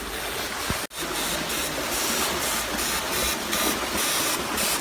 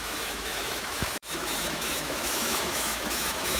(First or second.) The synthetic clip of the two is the second